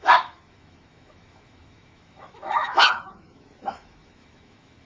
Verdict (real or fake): fake